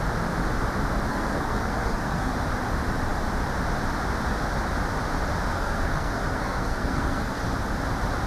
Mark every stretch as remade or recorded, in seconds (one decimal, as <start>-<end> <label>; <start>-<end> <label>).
0.0-1.1 recorded; 1.1-2.3 remade; 2.3-5.5 recorded; 5.5-7.4 remade; 7.4-8.3 recorded